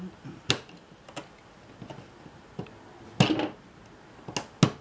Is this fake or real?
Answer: real